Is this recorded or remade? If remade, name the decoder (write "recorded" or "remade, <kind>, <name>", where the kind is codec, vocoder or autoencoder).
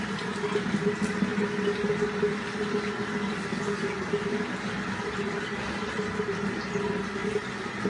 recorded